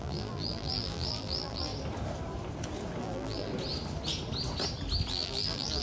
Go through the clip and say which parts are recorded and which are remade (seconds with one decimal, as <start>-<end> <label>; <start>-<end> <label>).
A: 0.0-1.7 remade; 1.7-3.0 recorded; 3.0-3.5 remade; 3.5-5.1 recorded; 5.1-5.8 remade